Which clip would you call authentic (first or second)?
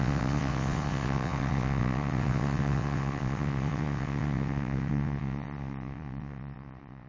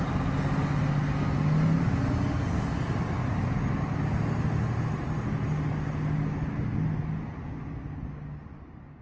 second